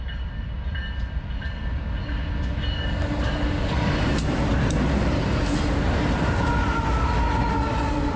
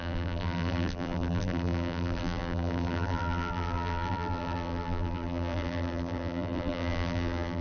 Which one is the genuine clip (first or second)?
first